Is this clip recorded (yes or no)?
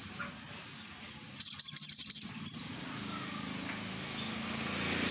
yes